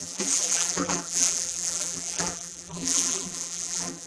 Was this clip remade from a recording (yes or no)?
yes